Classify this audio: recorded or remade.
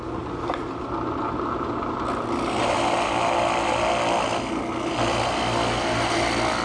recorded